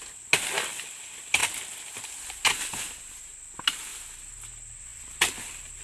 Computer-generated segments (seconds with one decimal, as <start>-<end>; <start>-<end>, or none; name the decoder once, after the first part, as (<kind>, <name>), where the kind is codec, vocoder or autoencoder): 3.9-4.4 (vocoder, BigVGAN v2); 4.9-5.8